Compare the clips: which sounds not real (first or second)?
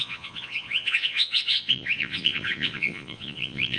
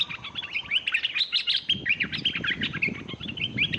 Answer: first